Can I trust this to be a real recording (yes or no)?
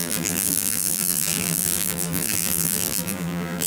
no